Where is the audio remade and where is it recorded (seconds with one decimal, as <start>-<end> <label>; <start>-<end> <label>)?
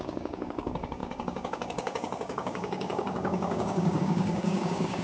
0.0-5.0 remade